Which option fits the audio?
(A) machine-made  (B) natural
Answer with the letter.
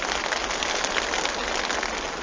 B